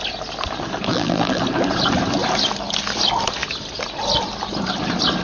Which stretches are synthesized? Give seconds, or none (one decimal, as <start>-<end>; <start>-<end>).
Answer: 0.9-1.4